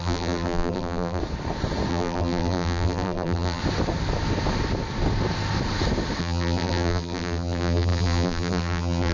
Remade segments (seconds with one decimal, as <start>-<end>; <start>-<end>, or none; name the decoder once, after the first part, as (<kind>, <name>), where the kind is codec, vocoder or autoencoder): 0.0-1.2 (vocoder, BigVGAN v2); 1.9-3.6; 6.2-9.1